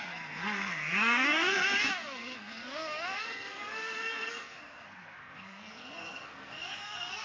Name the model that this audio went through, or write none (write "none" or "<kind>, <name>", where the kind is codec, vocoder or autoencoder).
codec, SNAC